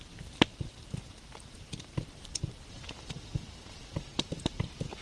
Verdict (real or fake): fake